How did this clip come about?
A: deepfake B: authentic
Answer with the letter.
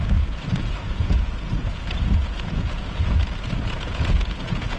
A